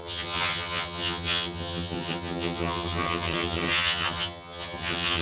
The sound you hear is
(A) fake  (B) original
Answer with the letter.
A